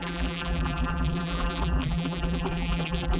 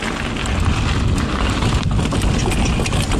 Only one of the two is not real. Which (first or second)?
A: first